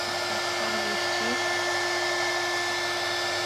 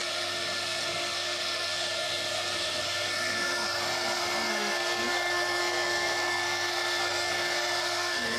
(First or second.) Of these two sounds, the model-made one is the second